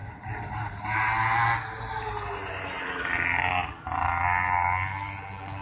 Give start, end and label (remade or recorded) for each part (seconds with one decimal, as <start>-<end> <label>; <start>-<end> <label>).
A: 0.0-1.0 remade; 1.0-5.6 recorded